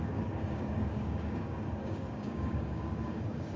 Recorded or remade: remade